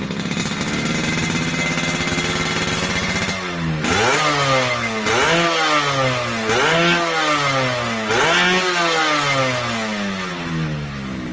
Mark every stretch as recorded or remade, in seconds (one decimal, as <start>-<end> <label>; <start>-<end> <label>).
0.0-11.3 recorded